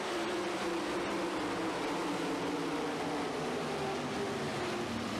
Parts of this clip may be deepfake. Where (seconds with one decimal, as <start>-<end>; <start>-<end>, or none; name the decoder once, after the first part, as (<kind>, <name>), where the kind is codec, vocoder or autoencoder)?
none